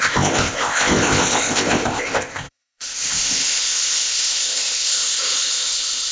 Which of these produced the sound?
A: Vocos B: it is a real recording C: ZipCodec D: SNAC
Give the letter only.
C